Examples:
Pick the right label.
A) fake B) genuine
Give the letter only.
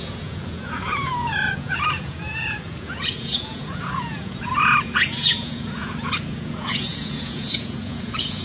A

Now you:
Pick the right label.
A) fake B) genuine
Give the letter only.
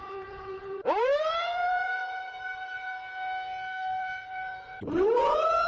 A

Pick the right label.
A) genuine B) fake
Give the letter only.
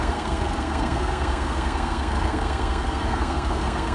B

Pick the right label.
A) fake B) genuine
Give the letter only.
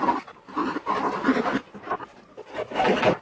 B